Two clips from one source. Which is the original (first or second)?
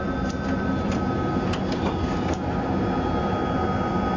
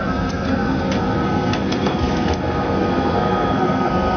first